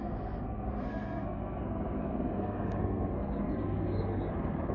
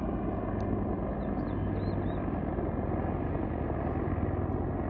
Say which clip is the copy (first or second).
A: first